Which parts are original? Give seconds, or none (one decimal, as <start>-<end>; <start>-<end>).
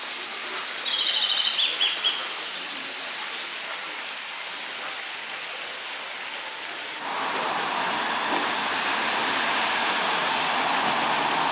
0.0-3.5; 7.7-11.5